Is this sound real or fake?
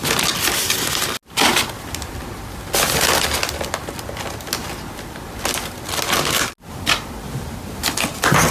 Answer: real